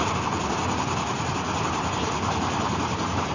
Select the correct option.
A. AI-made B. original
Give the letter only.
B